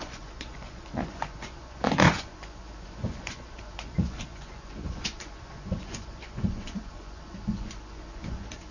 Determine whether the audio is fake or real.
fake